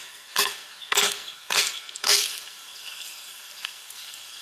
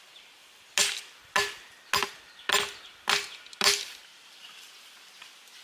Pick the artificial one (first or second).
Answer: first